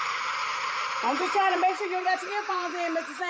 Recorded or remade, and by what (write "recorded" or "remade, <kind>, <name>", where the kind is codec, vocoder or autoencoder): remade, vocoder, BigVGAN v2